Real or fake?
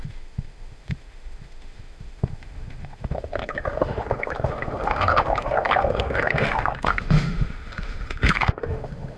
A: fake